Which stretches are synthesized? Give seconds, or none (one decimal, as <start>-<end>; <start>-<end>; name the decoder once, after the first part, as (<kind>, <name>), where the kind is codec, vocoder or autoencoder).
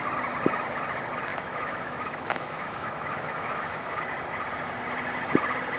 1.3-4.0 (autoencoder, DAC-VAE)